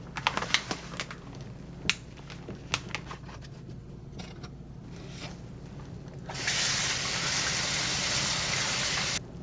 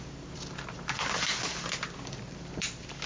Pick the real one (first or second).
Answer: first